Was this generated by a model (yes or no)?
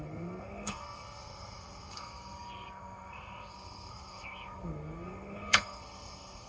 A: yes